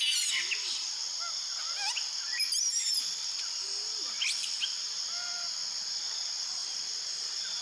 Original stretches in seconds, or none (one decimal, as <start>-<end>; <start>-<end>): 0.0-6.6